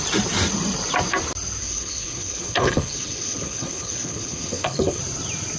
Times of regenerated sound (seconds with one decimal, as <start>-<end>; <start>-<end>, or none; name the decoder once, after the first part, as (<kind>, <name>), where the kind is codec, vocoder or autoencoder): 1.6-5.0 (codec, HILCodec)